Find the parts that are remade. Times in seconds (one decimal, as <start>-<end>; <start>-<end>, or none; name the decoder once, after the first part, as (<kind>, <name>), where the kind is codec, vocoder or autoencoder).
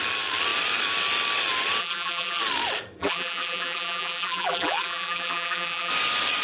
1.8-2.4 (vocoder, BigVGAN v2); 3.0-5.9